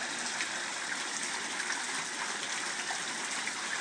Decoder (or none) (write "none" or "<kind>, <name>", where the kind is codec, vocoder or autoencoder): none